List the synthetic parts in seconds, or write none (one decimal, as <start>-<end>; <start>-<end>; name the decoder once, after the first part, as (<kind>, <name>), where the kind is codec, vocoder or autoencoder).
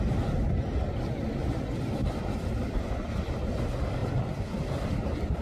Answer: 2.0-3.1 (vocoder, BigVGAN v2)